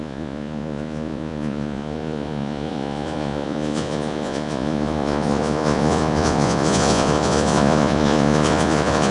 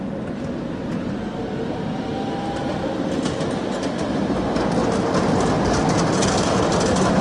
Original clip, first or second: second